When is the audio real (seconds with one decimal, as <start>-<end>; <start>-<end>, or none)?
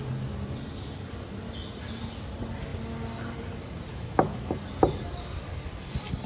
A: 0.0-3.9; 4.5-6.3